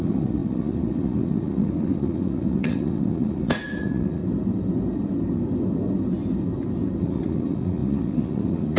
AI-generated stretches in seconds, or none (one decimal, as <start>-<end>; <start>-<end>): 0.0-4.2; 7.0-8.8